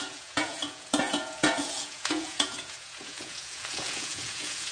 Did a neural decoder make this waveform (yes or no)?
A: yes